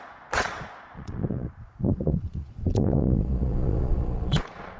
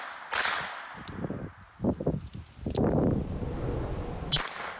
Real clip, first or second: second